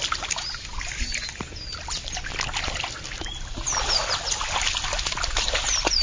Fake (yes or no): no